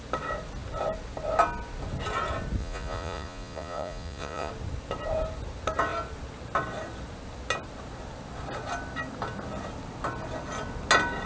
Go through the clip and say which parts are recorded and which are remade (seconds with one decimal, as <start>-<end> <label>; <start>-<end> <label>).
0.0-2.6 recorded; 2.6-4.5 remade; 4.5-11.3 recorded